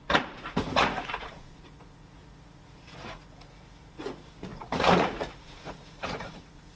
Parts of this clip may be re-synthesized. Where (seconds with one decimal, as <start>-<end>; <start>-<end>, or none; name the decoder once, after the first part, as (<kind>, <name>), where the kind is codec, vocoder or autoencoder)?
0.0-6.8 (vocoder, Vocos)